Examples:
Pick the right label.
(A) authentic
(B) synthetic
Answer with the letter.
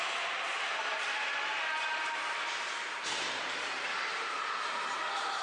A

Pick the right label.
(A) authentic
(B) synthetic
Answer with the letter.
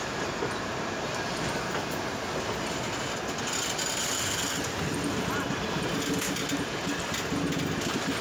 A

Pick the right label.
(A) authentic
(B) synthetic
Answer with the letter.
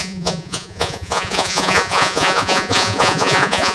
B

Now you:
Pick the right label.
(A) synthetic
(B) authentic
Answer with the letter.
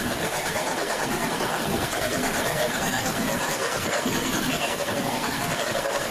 A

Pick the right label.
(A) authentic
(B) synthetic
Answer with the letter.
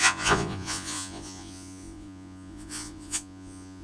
B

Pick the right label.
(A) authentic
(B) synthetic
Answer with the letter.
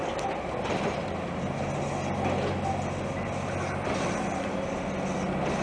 A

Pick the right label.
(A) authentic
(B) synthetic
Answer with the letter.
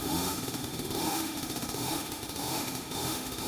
B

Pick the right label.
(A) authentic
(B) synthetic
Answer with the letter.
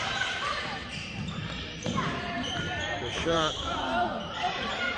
B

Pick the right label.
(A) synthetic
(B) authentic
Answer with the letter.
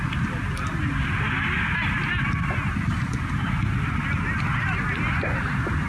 B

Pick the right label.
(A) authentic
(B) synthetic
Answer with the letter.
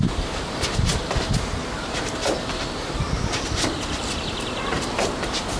A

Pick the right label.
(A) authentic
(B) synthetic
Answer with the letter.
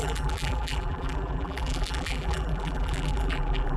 B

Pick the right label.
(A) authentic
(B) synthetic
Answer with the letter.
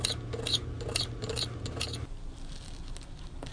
A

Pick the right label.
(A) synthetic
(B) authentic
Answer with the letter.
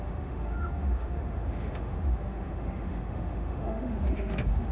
A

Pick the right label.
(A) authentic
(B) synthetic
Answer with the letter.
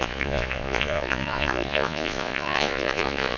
B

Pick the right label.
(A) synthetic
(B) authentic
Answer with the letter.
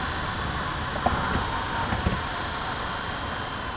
B